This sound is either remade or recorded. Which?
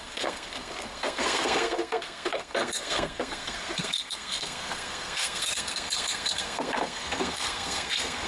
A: remade